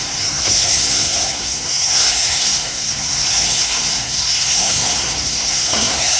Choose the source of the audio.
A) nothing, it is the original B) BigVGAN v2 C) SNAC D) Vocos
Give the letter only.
C